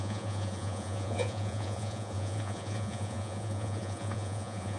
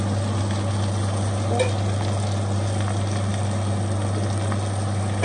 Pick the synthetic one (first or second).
first